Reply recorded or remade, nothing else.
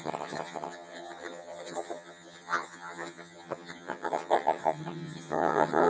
remade